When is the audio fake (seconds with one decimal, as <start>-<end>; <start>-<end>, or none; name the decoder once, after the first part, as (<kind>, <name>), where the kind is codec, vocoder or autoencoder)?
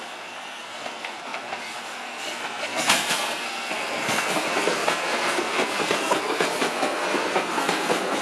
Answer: 0.0-8.2 (codec, SNAC)